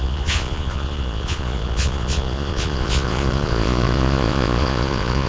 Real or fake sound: fake